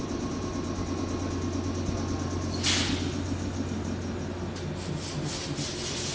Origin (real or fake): real